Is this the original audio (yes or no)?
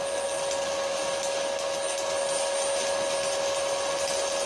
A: yes